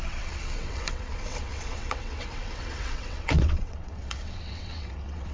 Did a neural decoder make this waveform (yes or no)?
yes